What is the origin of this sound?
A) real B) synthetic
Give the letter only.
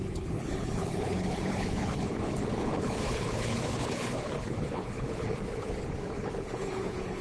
B